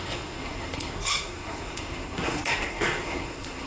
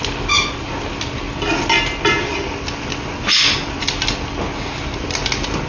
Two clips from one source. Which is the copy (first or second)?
first